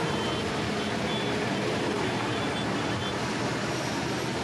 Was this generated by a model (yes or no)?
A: no